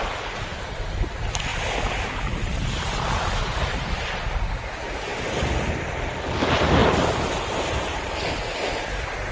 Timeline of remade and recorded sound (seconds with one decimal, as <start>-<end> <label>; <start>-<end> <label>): 0.0-1.5 recorded; 1.5-2.3 remade; 2.3-5.1 recorded; 5.1-5.8 remade; 5.8-9.3 recorded